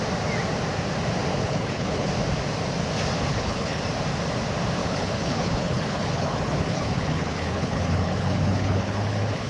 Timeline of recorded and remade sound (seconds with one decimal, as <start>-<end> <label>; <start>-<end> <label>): 0.0-1.3 recorded; 1.3-2.1 remade; 2.1-3.3 recorded; 3.3-3.8 remade; 3.8-4.8 recorded; 4.8-9.5 remade